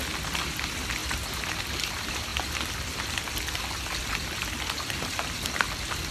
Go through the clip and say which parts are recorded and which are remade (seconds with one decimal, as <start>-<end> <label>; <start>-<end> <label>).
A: 0.0-6.1 recorded